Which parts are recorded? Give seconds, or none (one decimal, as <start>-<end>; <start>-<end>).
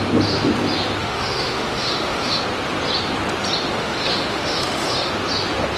0.0-1.0; 2.4-3.8; 5.1-5.8